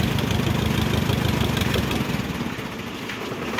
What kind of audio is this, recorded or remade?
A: remade